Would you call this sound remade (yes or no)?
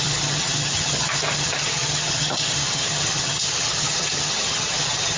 yes